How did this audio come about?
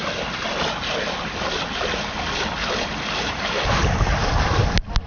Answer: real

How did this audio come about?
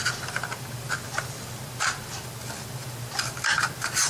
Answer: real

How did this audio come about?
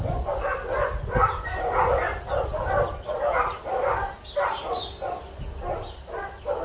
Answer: real